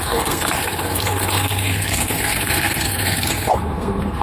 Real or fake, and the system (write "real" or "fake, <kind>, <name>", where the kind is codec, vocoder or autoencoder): fake, codec, SNAC